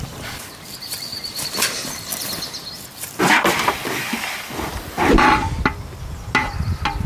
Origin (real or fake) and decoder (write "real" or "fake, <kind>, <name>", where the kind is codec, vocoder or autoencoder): real